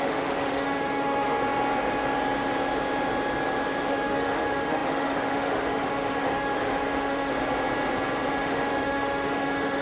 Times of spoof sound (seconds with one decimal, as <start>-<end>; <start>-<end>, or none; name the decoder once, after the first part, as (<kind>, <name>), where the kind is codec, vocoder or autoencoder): 0.0-1.4 (autoencoder, DAC-VAE); 3.9-7.3; 8.3-9.8